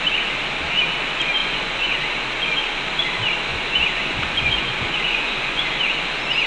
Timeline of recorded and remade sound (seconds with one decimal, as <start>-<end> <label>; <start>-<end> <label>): 0.0-1.4 recorded; 1.4-1.9 remade; 1.9-3.5 recorded; 3.5-5.8 remade; 5.8-6.5 recorded